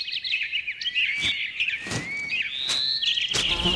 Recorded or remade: recorded